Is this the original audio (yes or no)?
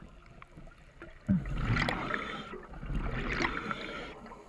yes